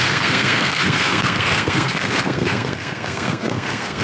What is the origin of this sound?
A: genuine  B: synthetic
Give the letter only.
B